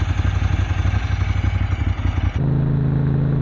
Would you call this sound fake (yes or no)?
no